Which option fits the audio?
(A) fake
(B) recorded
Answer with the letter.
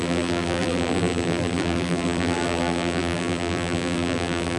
A